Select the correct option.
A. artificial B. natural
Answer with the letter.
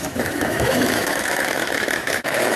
A